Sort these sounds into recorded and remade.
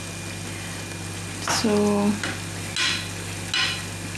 recorded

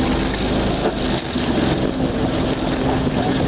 recorded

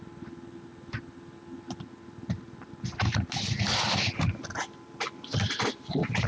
recorded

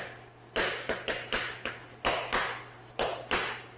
recorded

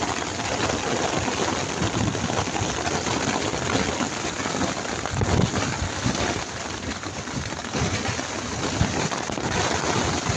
recorded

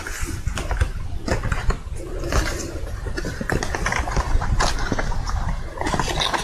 recorded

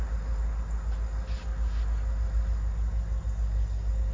recorded